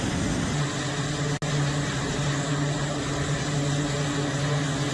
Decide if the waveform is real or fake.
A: real